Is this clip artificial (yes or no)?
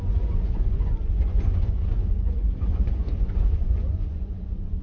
yes